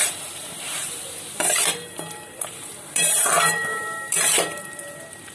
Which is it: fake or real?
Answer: fake